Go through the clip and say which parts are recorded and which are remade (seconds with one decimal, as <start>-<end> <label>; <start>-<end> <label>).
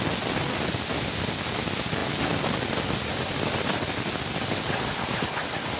0.0-5.8 recorded